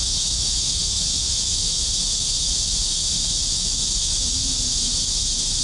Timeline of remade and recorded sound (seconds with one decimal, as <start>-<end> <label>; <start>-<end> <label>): 0.0-5.6 remade